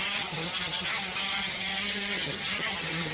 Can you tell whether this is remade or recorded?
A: remade